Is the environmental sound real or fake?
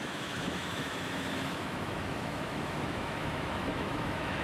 fake